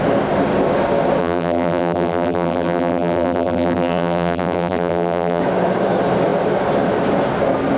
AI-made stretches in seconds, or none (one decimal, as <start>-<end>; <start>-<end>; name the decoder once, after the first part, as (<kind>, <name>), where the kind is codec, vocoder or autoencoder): 1.2-5.4 (vocoder, BigVGAN v2)

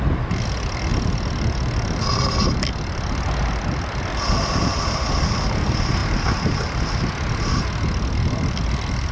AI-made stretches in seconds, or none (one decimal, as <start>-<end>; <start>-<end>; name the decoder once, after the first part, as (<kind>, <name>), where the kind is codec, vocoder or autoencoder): 0.9-4.0 (vocoder, BigVGAN v2)

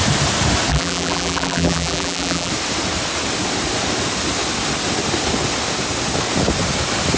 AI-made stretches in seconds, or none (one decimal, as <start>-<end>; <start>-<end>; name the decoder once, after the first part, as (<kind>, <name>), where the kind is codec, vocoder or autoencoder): 0.7-2.5 (vocoder, BigVGAN v2)

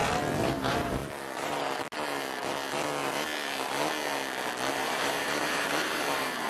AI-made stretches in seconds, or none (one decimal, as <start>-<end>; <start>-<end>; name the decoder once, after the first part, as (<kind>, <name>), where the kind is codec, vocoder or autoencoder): 0.5-1.0 (vocoder, BigVGAN v2); 4.7-6.5

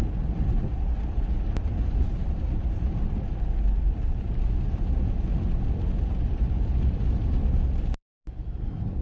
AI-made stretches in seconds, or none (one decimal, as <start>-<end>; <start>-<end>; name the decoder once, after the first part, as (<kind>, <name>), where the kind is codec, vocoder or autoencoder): 1.5-9.0 (vocoder, BigVGAN v2)

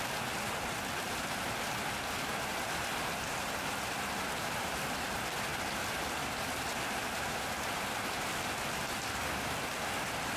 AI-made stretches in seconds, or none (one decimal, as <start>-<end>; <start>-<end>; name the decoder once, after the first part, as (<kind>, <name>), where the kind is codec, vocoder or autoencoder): 0.0-2.9 (vocoder, BigVGAN v2); 4.6-10.4